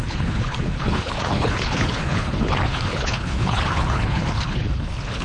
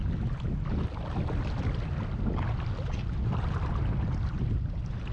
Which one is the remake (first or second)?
first